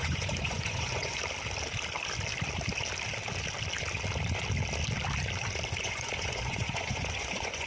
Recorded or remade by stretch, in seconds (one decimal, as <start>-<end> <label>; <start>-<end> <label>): 0.0-1.2 remade; 1.2-5.8 recorded; 5.8-7.7 remade